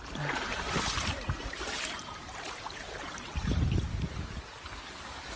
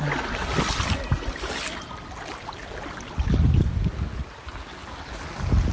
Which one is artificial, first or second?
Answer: first